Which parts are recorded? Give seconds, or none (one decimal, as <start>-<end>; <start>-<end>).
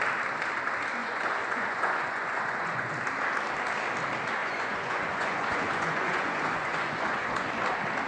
0.0-1.0; 2.9-4.4; 7.5-8.1